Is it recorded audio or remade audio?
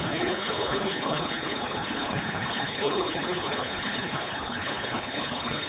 remade